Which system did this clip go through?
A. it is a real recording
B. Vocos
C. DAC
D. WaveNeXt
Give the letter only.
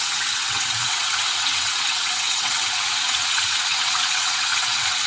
D